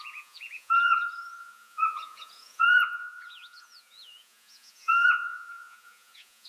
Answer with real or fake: fake